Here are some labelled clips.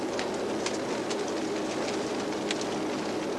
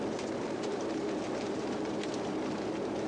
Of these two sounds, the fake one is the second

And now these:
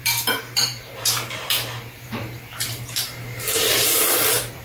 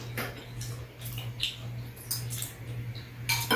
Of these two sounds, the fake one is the first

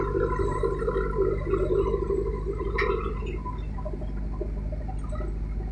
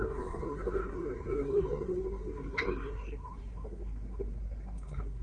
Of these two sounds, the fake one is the second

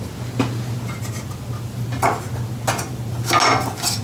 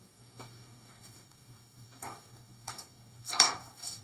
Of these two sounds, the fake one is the second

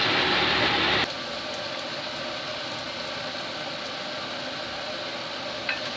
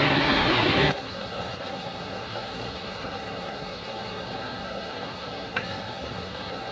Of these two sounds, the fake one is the second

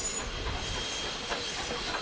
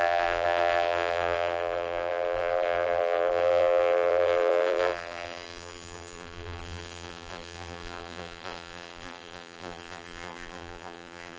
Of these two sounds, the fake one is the second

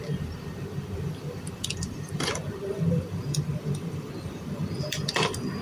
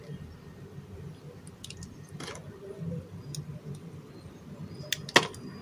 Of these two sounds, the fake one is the first